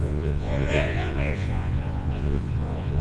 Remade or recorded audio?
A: remade